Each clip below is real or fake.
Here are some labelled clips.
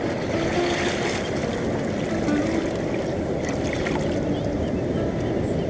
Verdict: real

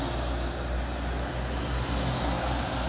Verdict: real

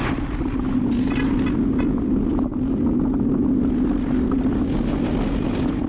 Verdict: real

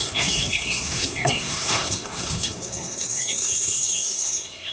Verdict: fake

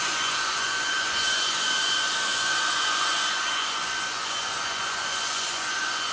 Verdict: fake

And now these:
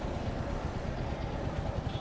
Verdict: real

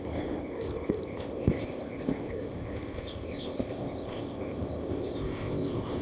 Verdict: fake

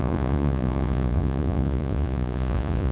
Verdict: fake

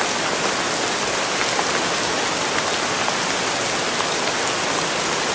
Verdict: real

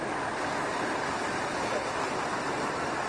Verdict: real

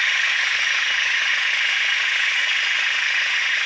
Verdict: fake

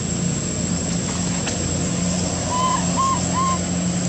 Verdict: real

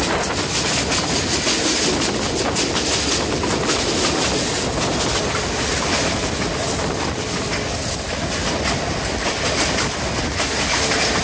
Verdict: real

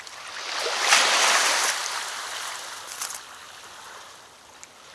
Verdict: real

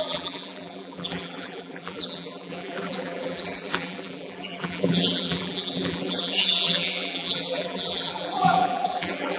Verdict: fake